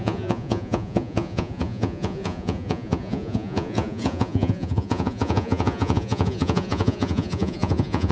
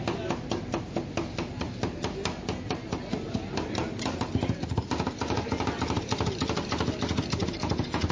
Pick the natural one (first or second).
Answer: second